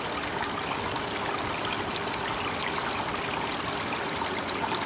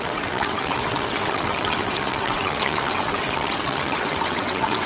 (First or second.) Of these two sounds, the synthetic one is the second